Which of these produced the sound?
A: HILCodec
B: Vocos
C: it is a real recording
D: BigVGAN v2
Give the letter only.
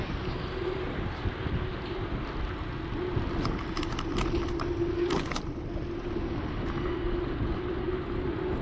C